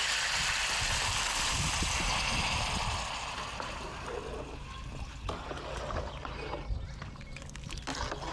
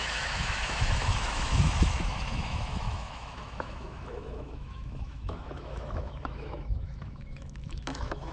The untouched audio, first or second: first